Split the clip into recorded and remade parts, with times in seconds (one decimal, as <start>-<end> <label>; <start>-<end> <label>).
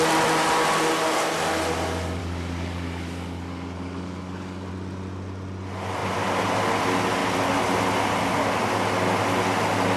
0.0-2.2 recorded; 2.2-4.7 remade; 4.7-10.0 recorded